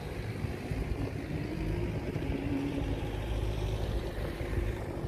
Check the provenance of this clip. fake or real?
fake